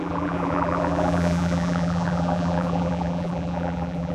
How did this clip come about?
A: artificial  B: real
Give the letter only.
A